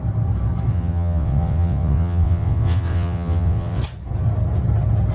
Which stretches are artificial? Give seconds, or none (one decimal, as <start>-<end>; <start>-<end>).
0.7-3.8